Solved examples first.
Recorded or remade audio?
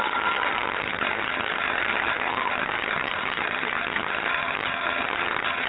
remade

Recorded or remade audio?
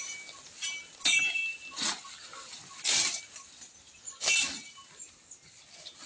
recorded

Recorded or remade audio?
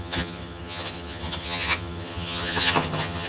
remade